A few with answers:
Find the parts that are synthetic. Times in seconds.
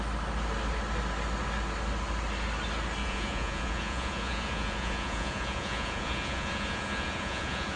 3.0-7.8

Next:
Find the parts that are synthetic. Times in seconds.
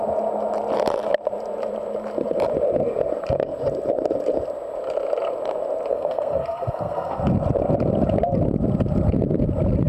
5.9-7.2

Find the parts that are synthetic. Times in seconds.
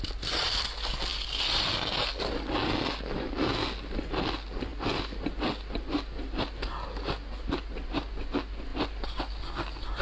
none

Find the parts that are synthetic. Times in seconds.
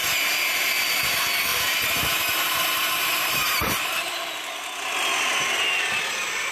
0.0-0.7; 1.5-4.3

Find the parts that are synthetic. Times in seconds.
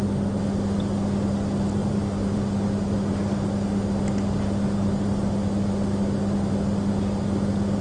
1.8-2.4